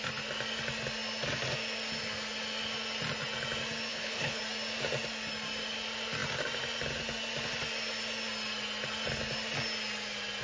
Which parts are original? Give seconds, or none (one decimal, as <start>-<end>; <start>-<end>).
0.0-3.9; 4.4-10.4